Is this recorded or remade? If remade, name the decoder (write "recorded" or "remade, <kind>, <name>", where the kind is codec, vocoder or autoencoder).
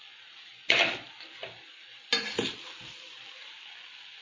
recorded